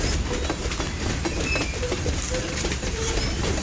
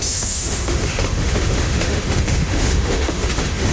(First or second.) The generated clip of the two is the second